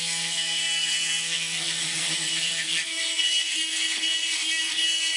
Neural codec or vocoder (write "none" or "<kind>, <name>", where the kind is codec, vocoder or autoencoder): codec, SNAC